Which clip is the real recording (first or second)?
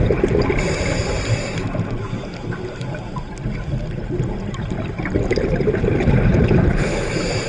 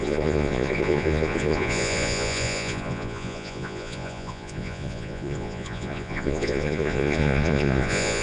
first